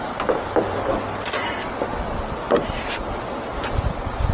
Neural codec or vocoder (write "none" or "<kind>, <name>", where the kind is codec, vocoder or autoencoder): none